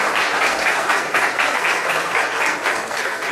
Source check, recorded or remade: remade